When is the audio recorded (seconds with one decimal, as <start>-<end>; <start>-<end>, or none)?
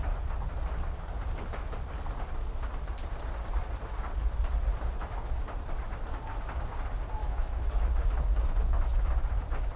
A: 0.0-7.2; 7.7-9.8